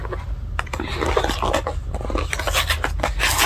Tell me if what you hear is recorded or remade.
recorded